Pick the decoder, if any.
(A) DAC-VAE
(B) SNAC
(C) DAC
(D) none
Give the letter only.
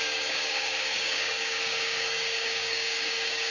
C